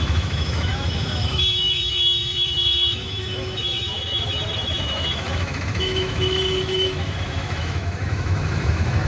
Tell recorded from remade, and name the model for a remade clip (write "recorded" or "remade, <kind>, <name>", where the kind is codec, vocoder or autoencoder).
remade, autoencoder, DAC-VAE